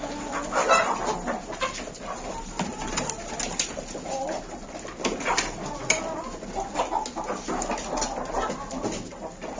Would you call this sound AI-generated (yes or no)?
no